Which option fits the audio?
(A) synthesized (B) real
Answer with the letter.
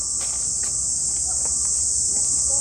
B